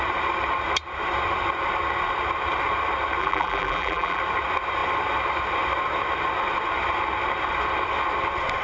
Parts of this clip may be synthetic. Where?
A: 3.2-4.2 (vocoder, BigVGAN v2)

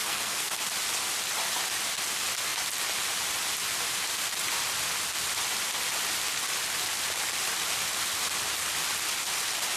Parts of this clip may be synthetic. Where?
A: 0.0-0.6 (codec, SNAC)

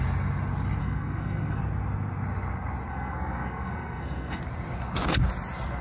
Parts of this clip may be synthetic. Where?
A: 0.8-1.6 (codec, SNAC); 2.9-4.4